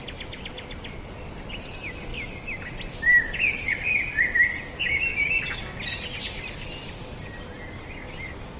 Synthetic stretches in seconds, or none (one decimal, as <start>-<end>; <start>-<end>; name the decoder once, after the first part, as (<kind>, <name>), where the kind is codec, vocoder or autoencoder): none